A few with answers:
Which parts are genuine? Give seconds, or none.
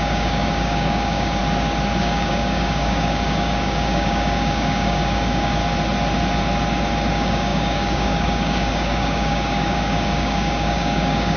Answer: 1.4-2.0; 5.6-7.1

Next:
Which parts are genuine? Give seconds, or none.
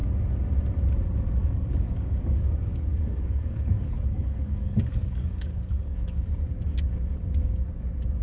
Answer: 0.0-1.4; 6.3-8.2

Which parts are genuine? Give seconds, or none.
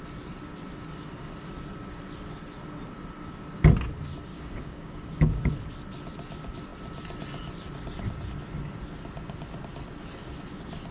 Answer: 0.0-4.3; 5.5-10.9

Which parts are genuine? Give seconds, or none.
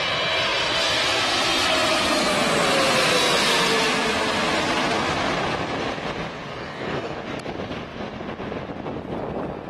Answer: 0.0-6.5; 7.2-9.7